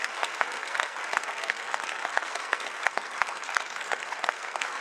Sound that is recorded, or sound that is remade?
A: remade